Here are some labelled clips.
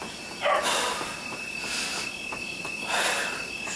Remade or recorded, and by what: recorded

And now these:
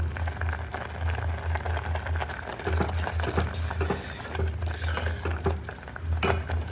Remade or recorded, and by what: recorded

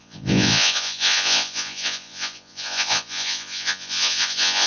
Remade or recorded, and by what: remade, vocoder, Vocos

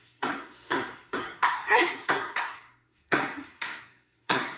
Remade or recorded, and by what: remade, codec, SNAC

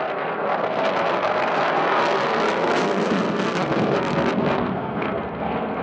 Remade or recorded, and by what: remade, codec, SNAC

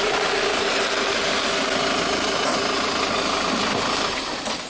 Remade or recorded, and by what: recorded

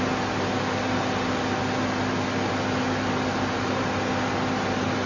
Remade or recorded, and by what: recorded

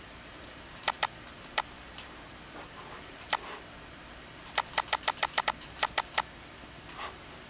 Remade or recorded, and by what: remade, vocoder, BigVGAN v2